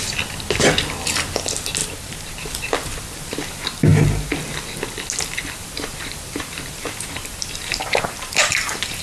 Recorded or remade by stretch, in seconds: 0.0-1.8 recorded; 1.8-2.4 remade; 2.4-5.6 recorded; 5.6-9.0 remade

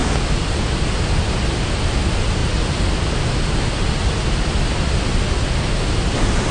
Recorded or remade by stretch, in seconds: 0.0-6.5 recorded